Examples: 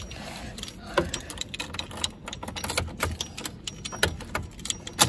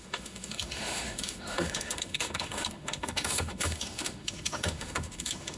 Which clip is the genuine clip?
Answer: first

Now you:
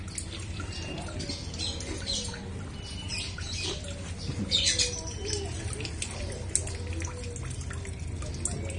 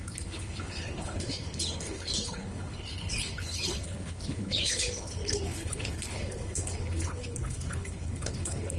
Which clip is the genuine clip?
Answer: first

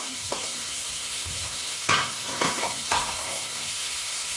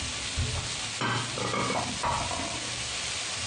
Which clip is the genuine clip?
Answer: second